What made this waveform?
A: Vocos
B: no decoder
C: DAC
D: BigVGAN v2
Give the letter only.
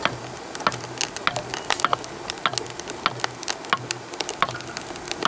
B